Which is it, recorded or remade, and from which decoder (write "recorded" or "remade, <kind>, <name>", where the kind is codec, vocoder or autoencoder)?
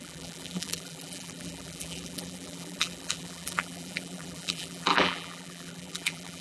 remade, vocoder, BigVGAN v2